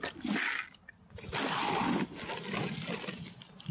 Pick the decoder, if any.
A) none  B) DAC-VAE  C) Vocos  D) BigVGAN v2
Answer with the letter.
A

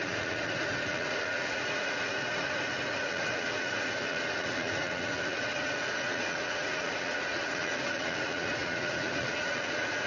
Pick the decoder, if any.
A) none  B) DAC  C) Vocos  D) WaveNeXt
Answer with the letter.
C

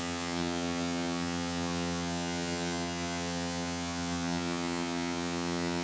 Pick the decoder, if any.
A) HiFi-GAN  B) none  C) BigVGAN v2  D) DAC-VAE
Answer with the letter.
A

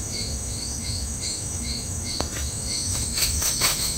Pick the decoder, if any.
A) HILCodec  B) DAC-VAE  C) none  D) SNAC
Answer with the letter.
B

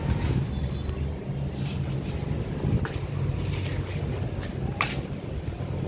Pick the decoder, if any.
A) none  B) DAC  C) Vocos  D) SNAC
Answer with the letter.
A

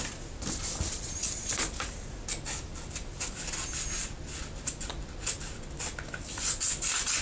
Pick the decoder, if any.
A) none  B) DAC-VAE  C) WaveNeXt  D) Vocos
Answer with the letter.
A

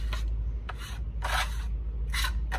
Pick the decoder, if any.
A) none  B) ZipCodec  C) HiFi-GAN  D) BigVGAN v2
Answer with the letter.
A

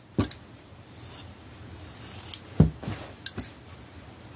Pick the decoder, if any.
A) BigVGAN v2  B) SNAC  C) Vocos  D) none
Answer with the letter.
D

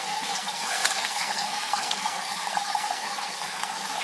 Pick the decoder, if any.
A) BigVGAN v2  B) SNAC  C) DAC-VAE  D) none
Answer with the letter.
B